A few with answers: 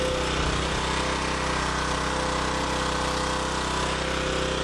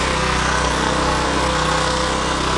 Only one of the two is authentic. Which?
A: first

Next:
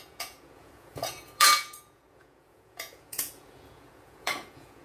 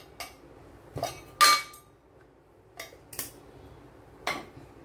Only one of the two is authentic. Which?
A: second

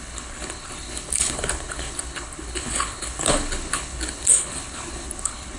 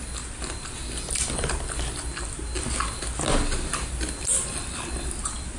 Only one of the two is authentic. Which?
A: second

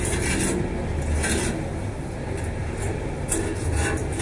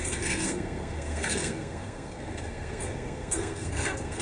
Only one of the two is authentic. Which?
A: first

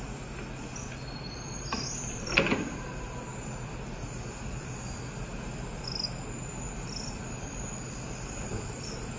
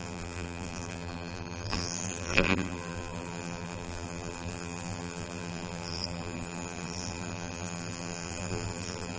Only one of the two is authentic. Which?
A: first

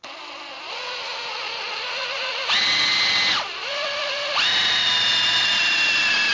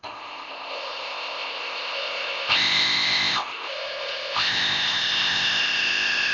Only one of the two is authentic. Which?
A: first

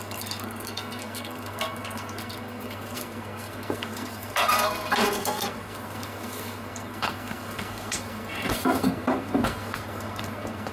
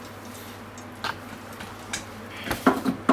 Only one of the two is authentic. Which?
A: second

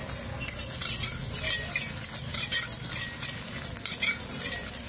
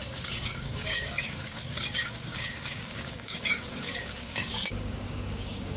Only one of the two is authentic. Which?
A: first